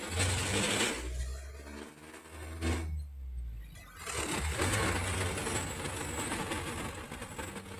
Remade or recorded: recorded